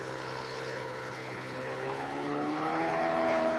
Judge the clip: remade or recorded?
remade